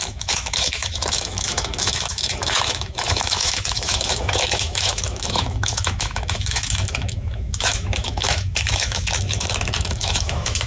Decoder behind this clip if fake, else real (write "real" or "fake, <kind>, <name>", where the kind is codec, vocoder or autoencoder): fake, autoencoder, DAC-VAE